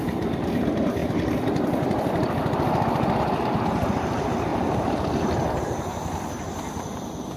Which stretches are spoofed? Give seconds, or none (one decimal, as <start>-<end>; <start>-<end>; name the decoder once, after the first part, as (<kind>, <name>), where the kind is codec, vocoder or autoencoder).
none